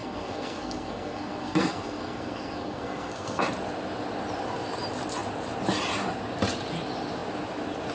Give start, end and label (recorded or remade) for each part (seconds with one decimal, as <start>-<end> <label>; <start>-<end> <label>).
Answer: 0.0-3.4 remade; 3.4-7.9 recorded